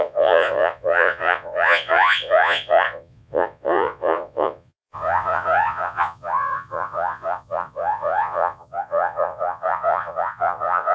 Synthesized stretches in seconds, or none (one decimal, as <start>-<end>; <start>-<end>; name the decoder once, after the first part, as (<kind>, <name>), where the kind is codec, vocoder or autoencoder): 0.0-10.9 (vocoder, Vocos)